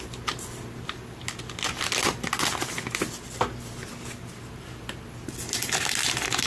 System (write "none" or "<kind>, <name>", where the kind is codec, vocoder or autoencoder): none